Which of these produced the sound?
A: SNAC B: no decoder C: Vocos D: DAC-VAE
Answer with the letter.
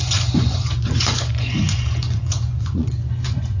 C